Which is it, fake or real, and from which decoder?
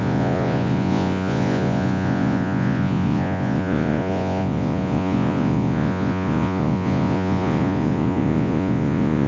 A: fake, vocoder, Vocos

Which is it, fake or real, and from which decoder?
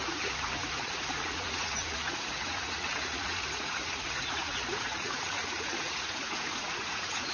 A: fake, vocoder, Vocos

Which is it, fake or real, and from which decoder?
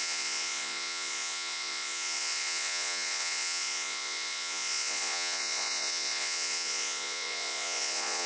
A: fake, vocoder, Vocos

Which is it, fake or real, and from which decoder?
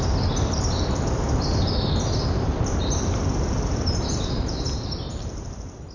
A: real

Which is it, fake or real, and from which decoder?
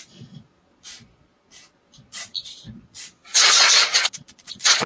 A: fake, vocoder, Vocos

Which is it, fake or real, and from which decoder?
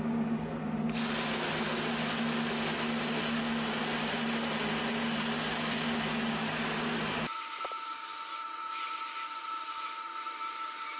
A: real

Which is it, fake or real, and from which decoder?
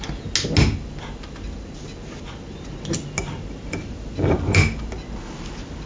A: real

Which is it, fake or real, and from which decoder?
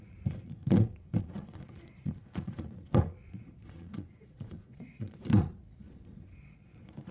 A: fake, vocoder, Vocos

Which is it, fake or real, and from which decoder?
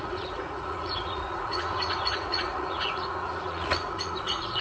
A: fake, vocoder, Vocos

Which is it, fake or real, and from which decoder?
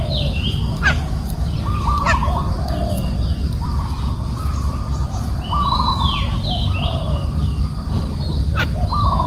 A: real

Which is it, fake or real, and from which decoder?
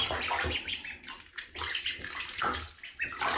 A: real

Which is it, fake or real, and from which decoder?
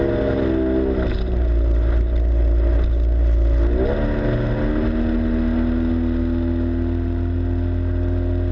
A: real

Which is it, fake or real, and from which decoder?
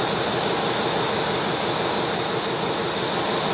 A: real